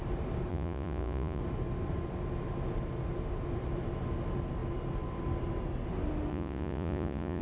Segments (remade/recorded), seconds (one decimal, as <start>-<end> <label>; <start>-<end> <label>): 0.0-0.5 recorded; 0.5-1.4 remade; 1.4-6.3 recorded; 6.3-7.4 remade